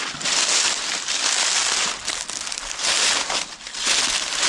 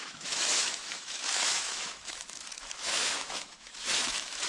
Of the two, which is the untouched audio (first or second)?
first